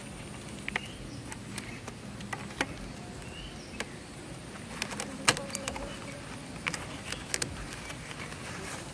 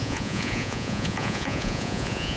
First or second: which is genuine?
first